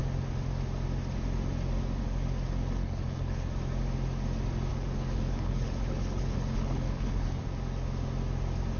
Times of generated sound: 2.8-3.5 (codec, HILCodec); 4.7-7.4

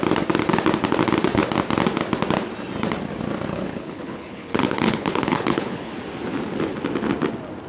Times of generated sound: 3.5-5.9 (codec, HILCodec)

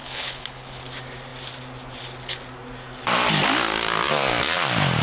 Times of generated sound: 0.0-0.8 (codec, HILCodec)

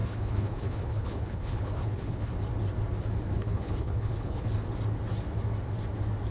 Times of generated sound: 0.0-2.3 (codec, HILCodec); 3.3-4.5